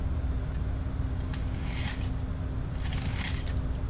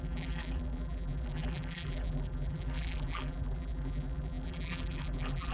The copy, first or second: second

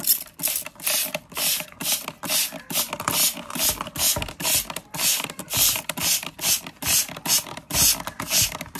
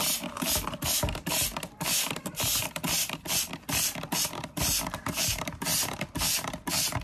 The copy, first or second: second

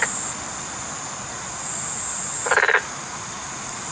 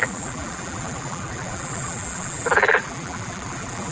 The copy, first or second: second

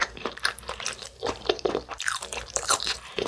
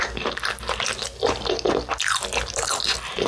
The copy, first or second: first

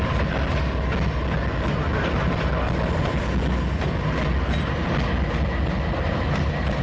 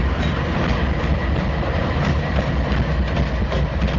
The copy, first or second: second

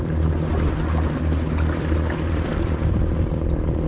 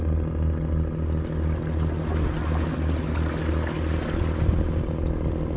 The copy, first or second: first